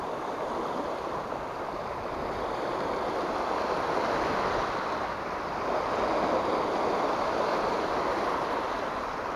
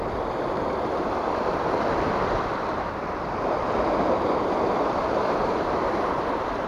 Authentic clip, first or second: first